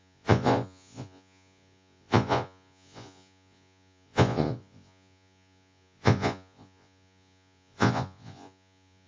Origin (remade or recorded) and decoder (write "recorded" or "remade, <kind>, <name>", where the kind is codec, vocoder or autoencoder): remade, vocoder, Vocos